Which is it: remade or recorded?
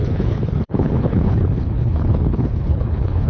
remade